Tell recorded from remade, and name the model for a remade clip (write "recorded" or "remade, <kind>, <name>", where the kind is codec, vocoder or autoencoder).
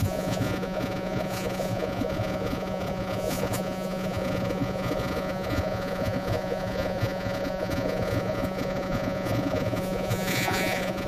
remade, vocoder, Vocos